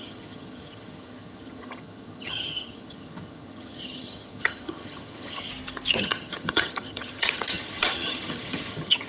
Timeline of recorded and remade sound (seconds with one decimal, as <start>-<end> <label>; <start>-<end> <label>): 0.0-5.5 remade; 5.5-6.0 recorded; 6.0-9.1 remade